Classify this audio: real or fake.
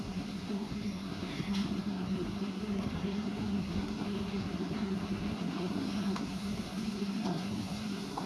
fake